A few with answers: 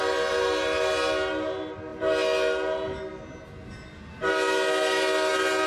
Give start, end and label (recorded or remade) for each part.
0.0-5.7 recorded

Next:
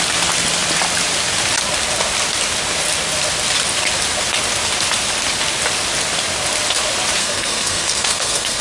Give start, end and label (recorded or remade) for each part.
0.0-7.2 recorded; 7.2-8.6 remade

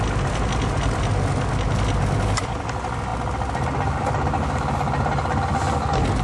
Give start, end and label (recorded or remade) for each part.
0.0-6.2 recorded

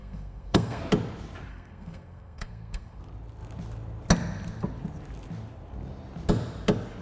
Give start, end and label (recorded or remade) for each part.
0.0-0.8 remade; 0.8-1.5 recorded; 1.5-3.0 remade; 3.0-7.0 recorded

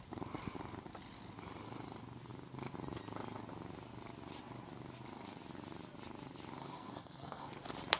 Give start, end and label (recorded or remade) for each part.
0.0-6.6 recorded; 6.6-7.5 remade; 7.5-8.0 recorded